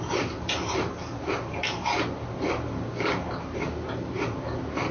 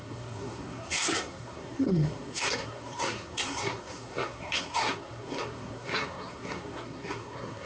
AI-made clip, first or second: second